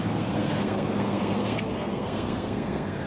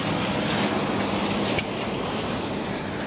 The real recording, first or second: second